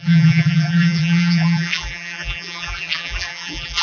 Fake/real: fake